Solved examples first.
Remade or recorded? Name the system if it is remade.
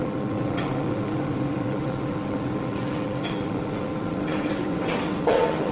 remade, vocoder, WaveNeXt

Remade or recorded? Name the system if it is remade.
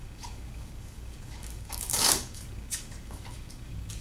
remade, codec, DAC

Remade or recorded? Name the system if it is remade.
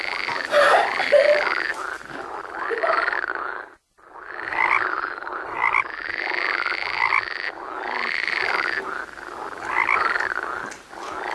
recorded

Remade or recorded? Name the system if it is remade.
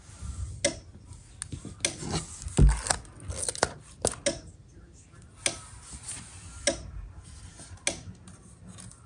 recorded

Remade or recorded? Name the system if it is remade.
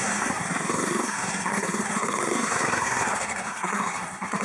remade, codec, SNAC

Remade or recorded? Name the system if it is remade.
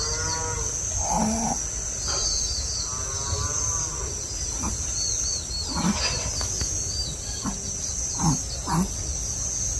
recorded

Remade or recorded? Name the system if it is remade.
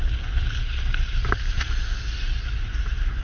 recorded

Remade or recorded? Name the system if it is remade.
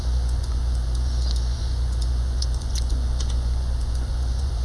remade, vocoder, Vocos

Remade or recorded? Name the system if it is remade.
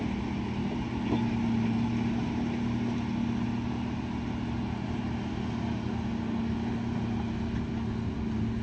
recorded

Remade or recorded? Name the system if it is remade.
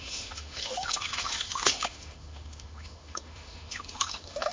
remade, autoencoder, DAC-VAE